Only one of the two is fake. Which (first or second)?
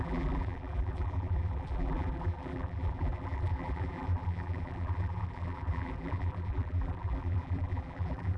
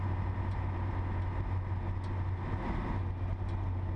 first